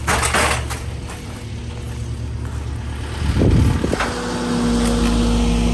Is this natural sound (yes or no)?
yes